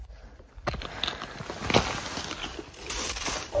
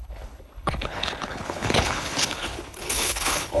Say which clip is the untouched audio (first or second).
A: first